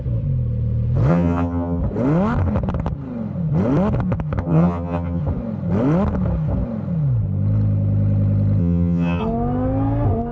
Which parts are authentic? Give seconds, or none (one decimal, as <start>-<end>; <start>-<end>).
0.0-1.1; 1.8-4.4; 5.2-8.6; 9.2-10.3